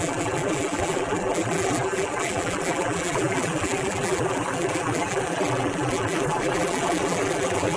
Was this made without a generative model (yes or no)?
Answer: no